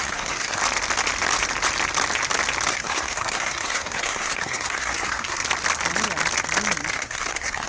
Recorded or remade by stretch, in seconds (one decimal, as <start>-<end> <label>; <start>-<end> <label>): 0.0-0.6 remade; 0.6-2.7 recorded; 2.7-5.4 remade; 5.4-6.9 recorded; 6.9-7.7 remade